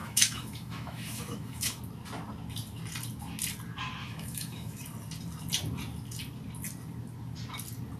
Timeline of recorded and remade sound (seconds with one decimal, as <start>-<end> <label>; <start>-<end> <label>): 0.0-1.8 remade; 1.8-4.0 recorded; 4.0-4.8 remade; 4.8-8.0 recorded